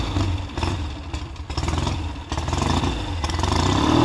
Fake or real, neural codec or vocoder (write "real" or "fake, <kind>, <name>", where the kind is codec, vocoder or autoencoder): real